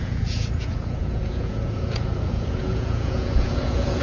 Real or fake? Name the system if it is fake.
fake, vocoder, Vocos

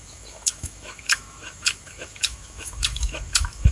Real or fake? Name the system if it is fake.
fake, autoencoder, DAC-VAE